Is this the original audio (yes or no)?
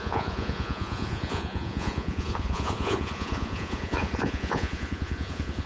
no